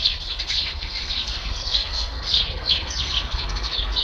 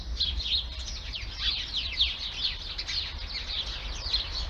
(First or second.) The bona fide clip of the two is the second